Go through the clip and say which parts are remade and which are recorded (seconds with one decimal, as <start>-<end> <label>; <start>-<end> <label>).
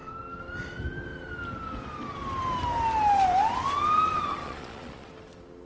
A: 0.0-4.4 recorded; 4.4-5.1 remade; 5.1-5.7 recorded